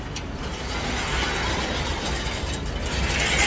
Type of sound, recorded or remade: recorded